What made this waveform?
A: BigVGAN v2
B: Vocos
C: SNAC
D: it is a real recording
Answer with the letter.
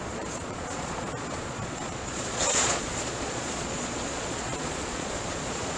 B